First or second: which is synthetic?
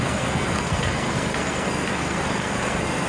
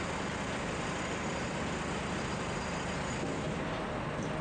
first